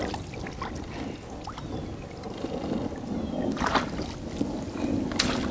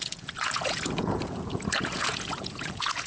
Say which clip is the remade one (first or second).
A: second